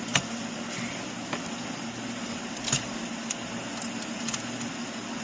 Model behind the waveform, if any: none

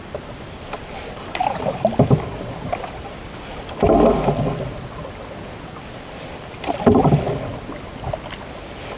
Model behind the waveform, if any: none